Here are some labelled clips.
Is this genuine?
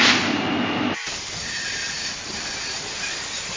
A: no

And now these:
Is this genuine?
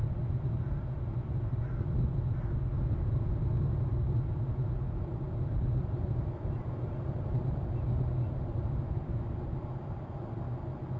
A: yes